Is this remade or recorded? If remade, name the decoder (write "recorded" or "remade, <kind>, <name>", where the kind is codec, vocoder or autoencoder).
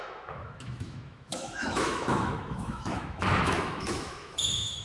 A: remade, autoencoder, DAC-VAE